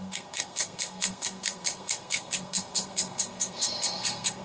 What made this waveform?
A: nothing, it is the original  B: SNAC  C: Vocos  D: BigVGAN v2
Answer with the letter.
B